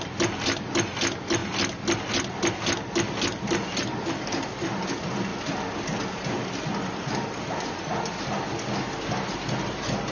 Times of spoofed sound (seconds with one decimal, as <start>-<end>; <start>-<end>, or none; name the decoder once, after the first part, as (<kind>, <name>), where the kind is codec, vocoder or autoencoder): none